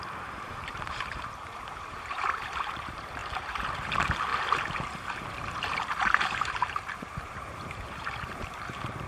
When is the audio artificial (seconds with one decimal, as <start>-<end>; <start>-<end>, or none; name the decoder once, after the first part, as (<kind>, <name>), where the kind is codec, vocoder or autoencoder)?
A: 0.0-4.3 (vocoder, BigVGAN v2); 4.9-9.1